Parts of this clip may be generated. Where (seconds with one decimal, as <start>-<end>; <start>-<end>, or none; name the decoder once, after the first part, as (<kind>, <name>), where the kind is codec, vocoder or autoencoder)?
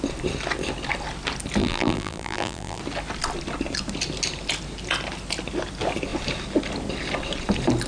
1.6-2.8 (vocoder, BigVGAN v2)